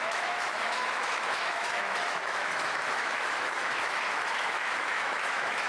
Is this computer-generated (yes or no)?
yes